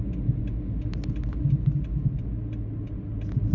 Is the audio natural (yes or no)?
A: yes